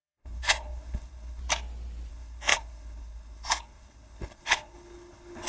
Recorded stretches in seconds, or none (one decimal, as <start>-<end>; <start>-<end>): 1.4-2.1